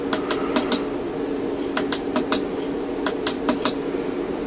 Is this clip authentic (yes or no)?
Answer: yes